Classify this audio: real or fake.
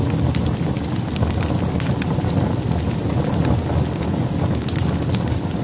real